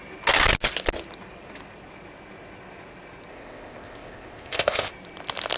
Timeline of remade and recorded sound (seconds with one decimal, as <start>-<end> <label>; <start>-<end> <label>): 0.0-3.3 recorded; 3.3-4.9 remade; 4.9-5.6 recorded